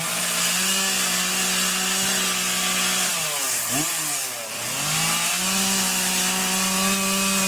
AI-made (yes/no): no